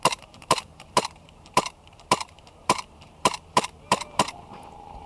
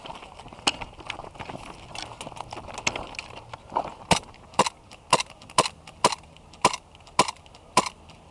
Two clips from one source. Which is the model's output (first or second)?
first